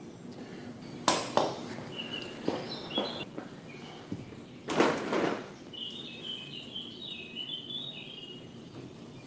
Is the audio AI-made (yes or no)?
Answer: no